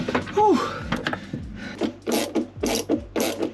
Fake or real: real